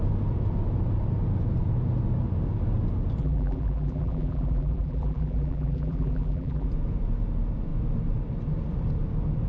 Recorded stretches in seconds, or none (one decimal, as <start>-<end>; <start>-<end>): 0.0-3.2; 6.7-9.5